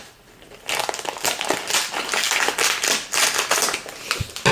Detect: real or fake real